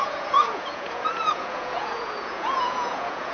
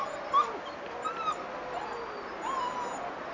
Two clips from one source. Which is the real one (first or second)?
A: second